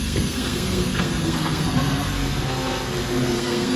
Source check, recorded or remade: remade